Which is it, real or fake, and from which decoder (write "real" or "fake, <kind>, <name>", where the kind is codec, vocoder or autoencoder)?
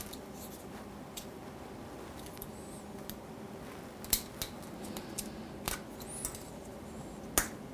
real